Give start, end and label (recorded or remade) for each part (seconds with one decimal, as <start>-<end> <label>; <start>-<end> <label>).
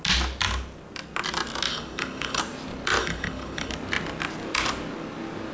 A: 0.0-1.7 recorded; 1.7-2.4 remade; 2.4-3.0 recorded; 3.0-3.7 remade; 3.7-5.5 recorded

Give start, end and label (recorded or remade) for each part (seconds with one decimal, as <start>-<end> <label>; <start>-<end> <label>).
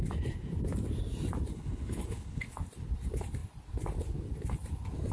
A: 0.0-1.5 recorded; 1.5-2.5 remade; 2.5-5.1 recorded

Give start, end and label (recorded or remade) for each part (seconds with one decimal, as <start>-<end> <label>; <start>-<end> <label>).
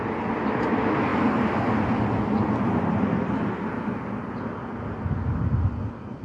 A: 0.0-6.2 recorded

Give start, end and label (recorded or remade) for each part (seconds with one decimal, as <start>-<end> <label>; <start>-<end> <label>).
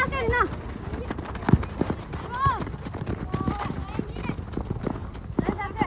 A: 0.0-5.9 recorded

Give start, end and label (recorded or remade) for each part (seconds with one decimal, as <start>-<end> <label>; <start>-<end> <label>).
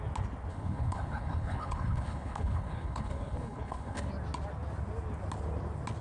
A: 0.0-0.5 recorded; 0.5-4.1 remade; 4.1-6.0 recorded